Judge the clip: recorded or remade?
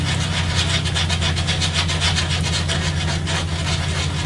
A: recorded